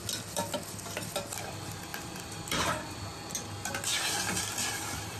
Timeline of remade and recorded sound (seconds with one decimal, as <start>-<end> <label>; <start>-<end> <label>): 0.0-1.9 recorded; 1.9-3.0 remade; 3.0-5.2 recorded